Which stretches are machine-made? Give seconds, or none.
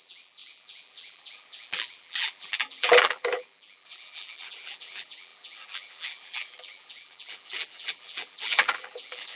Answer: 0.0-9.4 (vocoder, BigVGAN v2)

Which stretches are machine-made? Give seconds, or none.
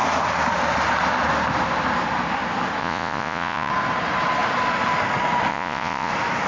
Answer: 2.8-3.7 (vocoder, Vocos); 5.5-6.1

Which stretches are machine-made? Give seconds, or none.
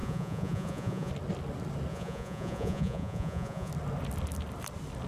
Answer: 0.0-1.1 (vocoder, Vocos); 1.9-3.7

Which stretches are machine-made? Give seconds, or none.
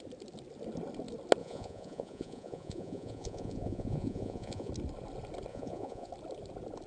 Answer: 1.4-4.7 (vocoder, Vocos); 5.5-6.1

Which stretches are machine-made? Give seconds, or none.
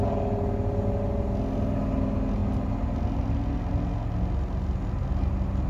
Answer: none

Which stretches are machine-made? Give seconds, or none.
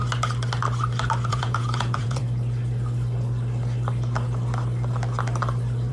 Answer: 1.3-2.2 (vocoder, Vocos)